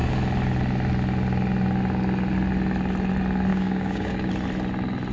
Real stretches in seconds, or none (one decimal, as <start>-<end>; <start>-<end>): 0.0-3.5; 4.3-5.1